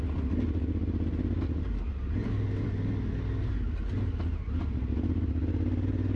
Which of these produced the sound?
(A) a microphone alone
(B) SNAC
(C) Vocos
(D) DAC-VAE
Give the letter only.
A